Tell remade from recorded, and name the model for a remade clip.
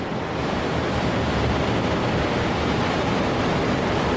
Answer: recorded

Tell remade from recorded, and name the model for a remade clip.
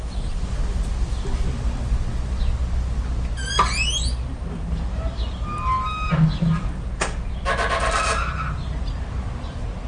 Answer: recorded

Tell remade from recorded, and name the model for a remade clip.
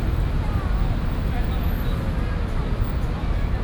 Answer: recorded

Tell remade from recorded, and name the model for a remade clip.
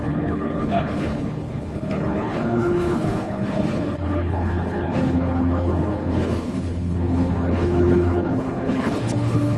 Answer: remade, codec, HILCodec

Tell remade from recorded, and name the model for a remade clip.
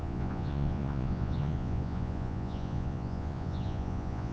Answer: remade, vocoder, Vocos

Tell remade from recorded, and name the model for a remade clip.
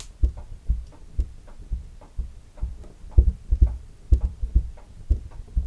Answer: remade, vocoder, BigVGAN v2